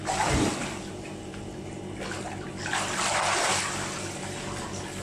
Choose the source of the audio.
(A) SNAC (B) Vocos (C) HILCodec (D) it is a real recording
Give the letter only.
D